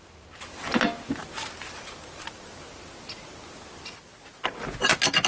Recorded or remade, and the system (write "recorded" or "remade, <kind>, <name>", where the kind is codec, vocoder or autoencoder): recorded